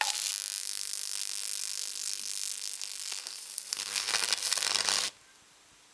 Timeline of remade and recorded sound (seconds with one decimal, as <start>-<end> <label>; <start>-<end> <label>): 0.0-0.6 recorded; 0.6-4.1 remade; 4.1-5.9 recorded